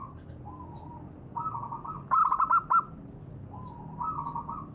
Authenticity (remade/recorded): recorded